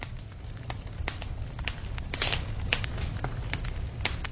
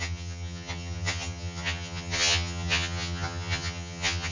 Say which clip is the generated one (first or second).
second